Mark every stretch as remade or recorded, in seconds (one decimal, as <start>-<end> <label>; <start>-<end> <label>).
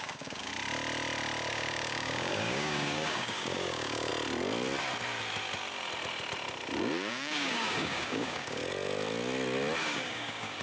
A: 0.0-0.5 remade; 0.5-1.5 recorded; 1.5-4.1 remade; 4.1-7.1 recorded; 7.1-8.6 remade; 8.6-9.8 recorded; 9.8-10.6 remade